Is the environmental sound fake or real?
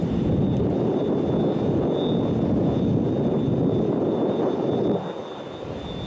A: real